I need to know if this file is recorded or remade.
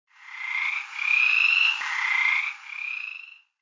remade